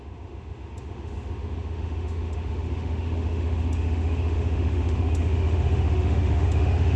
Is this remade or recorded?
remade